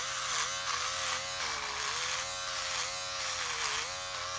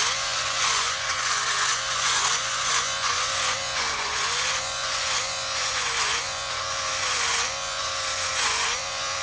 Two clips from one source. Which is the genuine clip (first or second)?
first